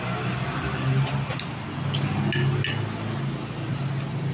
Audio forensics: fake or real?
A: real